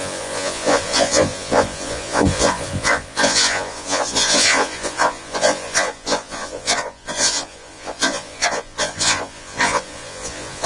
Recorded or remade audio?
remade